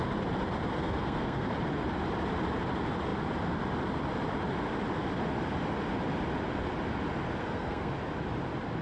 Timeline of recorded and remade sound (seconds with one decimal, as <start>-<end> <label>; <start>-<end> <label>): 0.0-0.8 recorded; 0.8-1.5 remade; 1.5-7.4 recorded; 7.4-7.9 remade; 7.9-8.8 recorded